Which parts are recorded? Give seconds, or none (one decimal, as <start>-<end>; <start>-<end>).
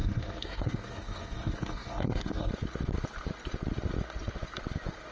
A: 2.5-5.1